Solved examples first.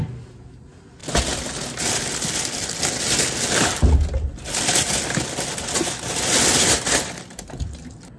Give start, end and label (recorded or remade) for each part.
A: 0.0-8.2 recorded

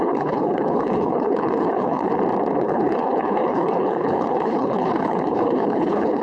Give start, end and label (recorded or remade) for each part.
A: 0.0-2.1 remade; 2.1-2.6 recorded; 2.6-6.2 remade

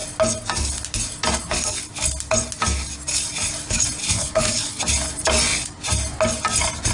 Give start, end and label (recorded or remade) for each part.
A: 0.0-4.0 recorded; 4.0-4.8 remade; 4.8-6.9 recorded

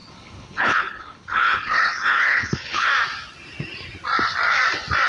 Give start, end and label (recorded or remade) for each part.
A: 0.0-2.9 remade; 2.9-5.1 recorded